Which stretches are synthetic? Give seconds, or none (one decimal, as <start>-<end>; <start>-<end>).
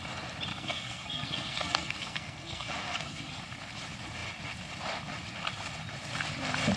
0.5-3.4